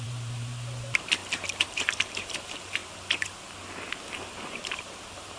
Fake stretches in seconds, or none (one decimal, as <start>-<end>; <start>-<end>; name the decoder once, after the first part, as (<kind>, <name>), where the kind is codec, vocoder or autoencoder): 0.0-2.8 (vocoder, BigVGAN v2); 4.2-5.4